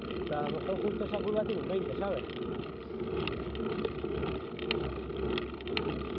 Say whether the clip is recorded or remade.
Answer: recorded